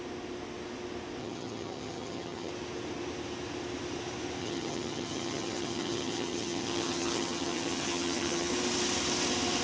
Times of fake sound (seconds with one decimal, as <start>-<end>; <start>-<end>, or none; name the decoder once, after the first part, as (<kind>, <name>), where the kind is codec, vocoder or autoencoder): 1.2-2.5 (vocoder, HiFi-GAN); 4.4-8.5